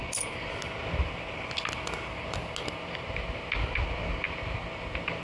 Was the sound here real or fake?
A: real